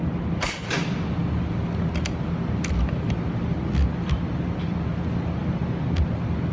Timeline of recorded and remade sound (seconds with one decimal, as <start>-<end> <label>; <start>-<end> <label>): 0.0-6.5 recorded